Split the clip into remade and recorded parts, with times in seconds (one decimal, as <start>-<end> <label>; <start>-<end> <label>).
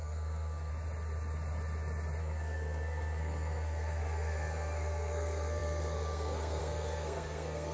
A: 0.0-0.7 remade; 0.7-2.2 recorded; 2.2-7.7 remade